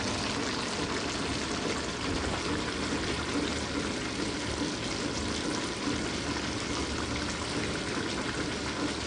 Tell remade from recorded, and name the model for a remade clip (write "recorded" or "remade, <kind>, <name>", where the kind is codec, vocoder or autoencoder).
recorded